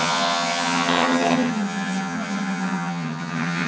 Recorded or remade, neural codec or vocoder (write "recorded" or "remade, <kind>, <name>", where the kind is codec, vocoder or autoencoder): remade, vocoder, HiFi-GAN